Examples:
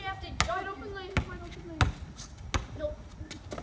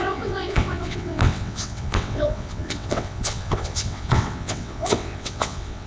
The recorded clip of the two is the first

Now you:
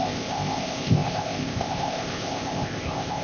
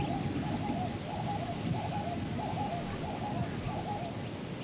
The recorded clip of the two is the second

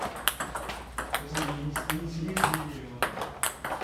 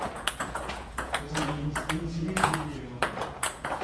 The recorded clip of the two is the first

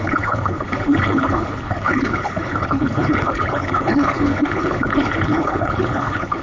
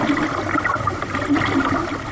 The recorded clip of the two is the second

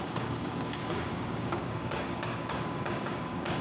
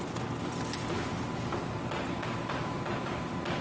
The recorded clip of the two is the second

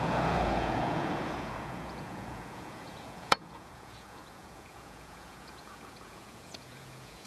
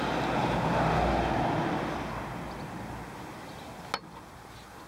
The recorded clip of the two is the second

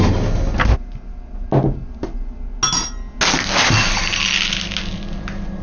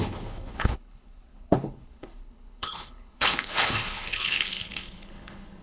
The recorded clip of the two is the first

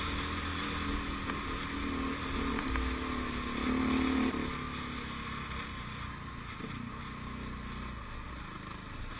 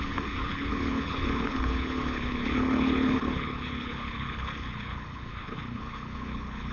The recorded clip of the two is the first